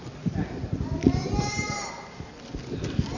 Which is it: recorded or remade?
recorded